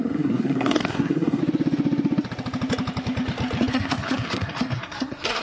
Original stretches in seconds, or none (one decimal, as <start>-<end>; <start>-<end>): 1.4-3.7